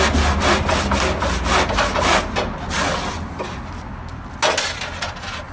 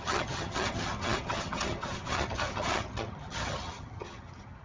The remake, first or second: second